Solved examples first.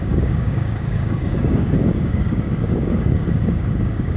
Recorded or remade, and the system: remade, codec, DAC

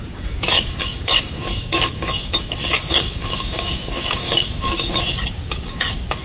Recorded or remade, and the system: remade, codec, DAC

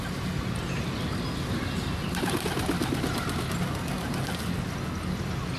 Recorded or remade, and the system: recorded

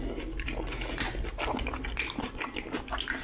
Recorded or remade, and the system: recorded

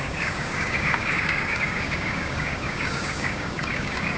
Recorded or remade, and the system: remade, codec, DAC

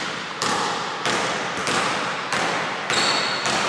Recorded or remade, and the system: recorded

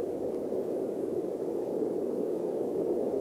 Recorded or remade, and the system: remade, codec, DAC